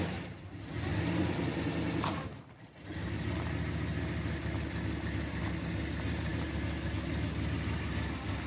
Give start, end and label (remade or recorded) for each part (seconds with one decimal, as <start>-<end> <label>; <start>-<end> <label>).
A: 0.0-8.5 recorded